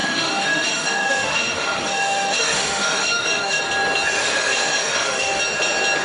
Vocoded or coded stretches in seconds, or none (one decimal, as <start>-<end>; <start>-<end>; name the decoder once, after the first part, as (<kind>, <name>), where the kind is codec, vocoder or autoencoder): 0.0-3.6 (autoencoder, DAC-VAE); 4.2-5.4